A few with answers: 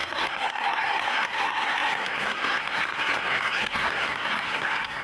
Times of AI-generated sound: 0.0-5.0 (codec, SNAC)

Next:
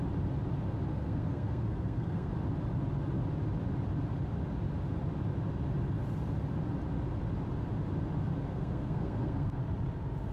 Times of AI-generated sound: 0.9-2.3 (codec, SNAC); 8.5-9.6

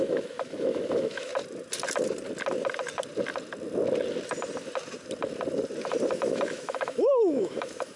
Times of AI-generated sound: 0.0-1.3 (autoencoder, DAC-VAE); 6.1-8.0

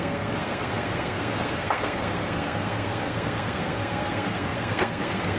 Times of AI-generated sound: 0.0-5.4 (codec, SNAC)